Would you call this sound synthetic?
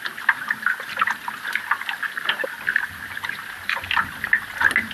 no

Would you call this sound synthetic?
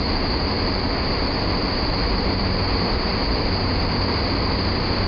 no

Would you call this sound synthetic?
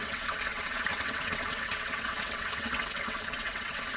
yes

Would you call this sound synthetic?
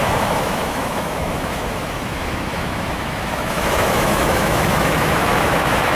yes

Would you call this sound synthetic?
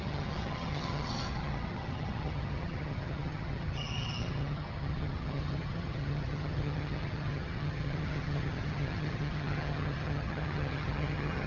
yes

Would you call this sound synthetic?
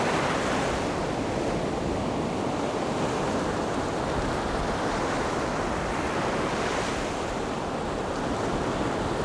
no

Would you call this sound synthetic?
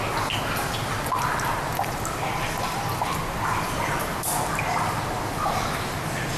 no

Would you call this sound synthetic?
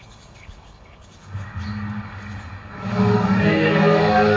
yes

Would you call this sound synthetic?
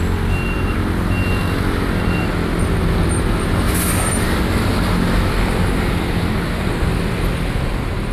no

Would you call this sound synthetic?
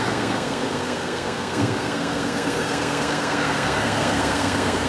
yes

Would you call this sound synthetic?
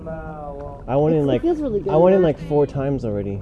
no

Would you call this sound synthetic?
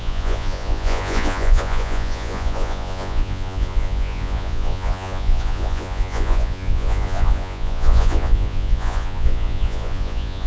yes